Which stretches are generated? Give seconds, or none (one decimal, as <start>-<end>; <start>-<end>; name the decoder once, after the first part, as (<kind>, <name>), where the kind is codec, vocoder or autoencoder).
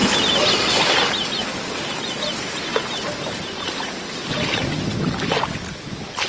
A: none